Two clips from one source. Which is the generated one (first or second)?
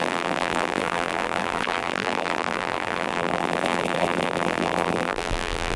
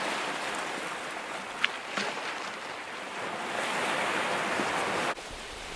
first